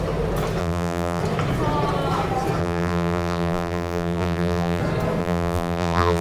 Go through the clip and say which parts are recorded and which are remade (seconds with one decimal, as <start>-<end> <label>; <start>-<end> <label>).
0.0-0.6 recorded; 0.6-1.2 remade; 1.2-2.6 recorded; 2.6-4.8 remade; 4.8-5.2 recorded; 5.2-6.2 remade